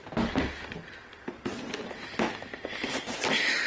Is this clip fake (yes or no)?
no